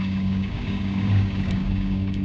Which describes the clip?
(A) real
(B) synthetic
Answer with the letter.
B